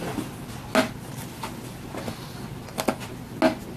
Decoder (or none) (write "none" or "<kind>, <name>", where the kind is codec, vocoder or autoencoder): none